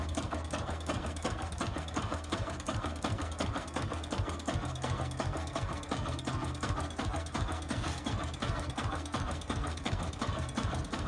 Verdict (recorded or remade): remade